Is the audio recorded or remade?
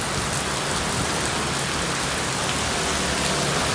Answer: recorded